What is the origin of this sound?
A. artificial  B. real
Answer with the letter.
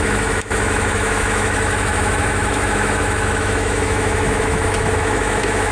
A